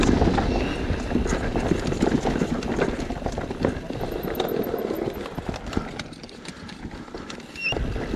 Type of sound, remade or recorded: recorded